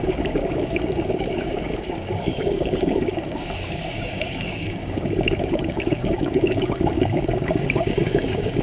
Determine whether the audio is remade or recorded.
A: remade